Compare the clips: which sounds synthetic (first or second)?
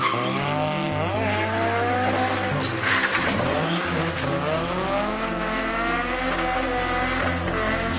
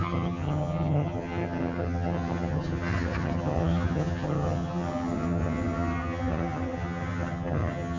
second